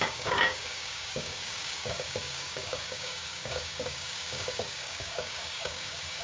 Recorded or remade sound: remade